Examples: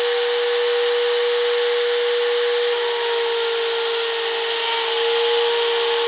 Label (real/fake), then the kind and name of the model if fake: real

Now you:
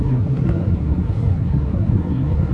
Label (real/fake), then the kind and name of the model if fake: fake, codec, SNAC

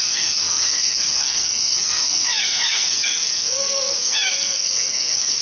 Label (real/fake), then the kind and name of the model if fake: fake, codec, SNAC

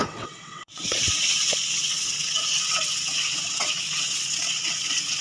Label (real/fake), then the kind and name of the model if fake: fake, vocoder, WaveNeXt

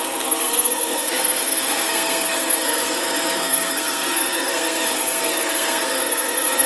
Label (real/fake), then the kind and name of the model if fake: fake, codec, SNAC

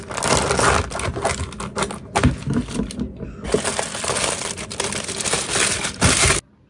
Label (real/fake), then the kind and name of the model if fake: real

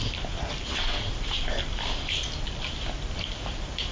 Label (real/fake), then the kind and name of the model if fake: real